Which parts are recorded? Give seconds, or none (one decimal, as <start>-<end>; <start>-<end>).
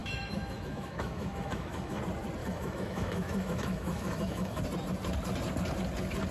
2.0-2.4; 4.6-6.3